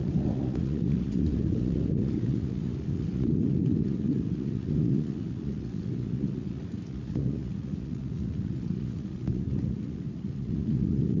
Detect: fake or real fake